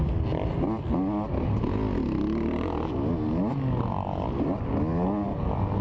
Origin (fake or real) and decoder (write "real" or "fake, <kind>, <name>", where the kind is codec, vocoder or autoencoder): real